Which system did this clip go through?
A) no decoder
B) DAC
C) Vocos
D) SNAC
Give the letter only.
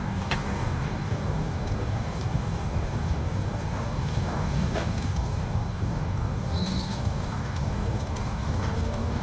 B